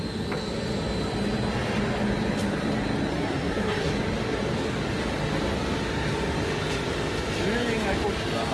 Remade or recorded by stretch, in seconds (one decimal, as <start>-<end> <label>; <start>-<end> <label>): 0.0-3.1 recorded; 3.1-3.9 remade; 3.9-8.5 recorded